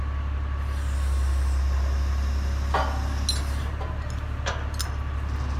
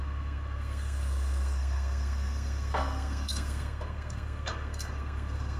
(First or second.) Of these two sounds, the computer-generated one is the second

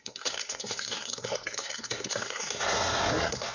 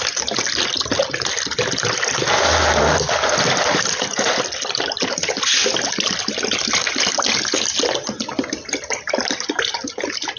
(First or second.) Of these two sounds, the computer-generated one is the first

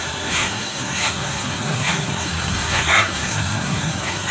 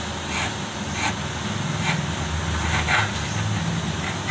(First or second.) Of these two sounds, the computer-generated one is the first